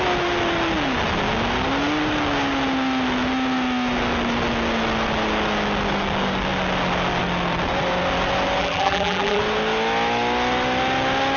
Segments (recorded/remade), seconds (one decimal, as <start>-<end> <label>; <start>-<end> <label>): 0.0-8.6 recorded; 8.6-9.4 remade; 9.4-11.4 recorded